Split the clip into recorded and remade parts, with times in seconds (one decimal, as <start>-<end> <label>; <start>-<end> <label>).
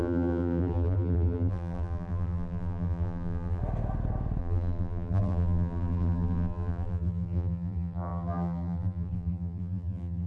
0.0-3.6 remade; 3.6-4.4 recorded; 4.4-10.3 remade